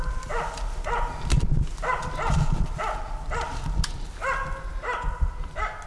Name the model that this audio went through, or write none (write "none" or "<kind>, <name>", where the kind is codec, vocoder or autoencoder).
none